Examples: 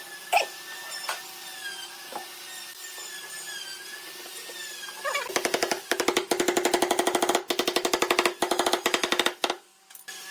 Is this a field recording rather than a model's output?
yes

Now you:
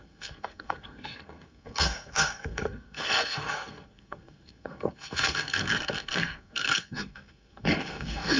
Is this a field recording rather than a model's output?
no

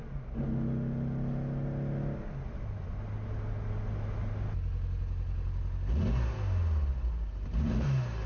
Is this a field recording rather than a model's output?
yes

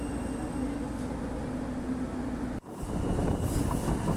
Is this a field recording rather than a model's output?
yes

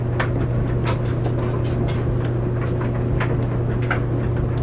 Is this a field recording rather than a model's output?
yes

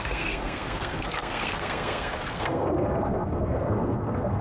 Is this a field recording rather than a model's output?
no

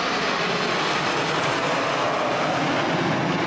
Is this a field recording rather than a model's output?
yes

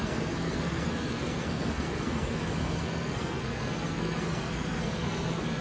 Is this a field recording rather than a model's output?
no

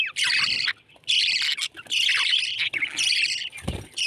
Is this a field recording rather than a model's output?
yes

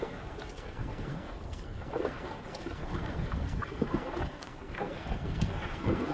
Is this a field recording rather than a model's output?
no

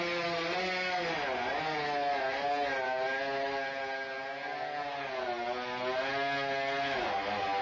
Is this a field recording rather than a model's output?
yes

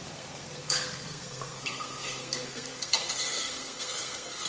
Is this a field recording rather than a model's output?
no